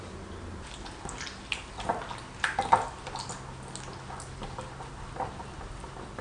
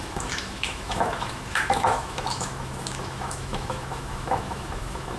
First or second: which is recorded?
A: first